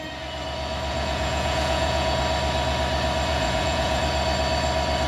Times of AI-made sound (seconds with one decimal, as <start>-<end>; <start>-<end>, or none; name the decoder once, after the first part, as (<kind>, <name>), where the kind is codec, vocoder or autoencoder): 0.9-2.2 (vocoder, Vocos); 3.3-4.0